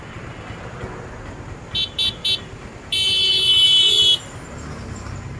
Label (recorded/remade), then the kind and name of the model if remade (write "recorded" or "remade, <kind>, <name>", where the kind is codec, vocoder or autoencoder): recorded